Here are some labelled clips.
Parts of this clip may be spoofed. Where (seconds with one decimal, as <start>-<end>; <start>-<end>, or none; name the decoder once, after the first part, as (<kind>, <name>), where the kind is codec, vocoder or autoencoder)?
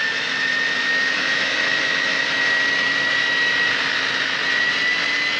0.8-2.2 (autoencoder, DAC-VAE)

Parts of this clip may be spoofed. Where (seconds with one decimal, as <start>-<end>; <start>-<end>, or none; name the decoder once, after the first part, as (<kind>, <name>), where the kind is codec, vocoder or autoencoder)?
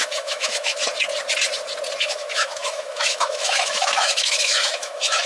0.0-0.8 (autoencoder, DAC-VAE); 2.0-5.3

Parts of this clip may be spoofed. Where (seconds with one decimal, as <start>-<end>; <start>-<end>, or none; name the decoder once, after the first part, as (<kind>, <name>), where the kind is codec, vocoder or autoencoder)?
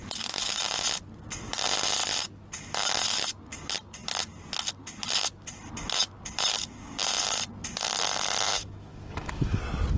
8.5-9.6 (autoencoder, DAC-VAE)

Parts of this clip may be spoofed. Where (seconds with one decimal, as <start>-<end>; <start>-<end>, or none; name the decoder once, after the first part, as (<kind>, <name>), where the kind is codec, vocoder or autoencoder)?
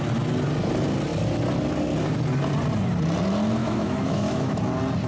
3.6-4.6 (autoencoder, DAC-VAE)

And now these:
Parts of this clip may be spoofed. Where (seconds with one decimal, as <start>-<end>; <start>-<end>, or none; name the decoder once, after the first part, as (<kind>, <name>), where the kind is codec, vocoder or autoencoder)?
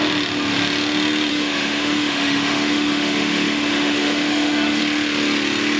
1.3-4.8 (autoencoder, DAC-VAE)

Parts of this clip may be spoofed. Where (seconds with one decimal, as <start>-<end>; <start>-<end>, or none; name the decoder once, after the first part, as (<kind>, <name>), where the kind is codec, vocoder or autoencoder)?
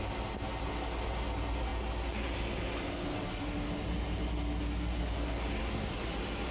none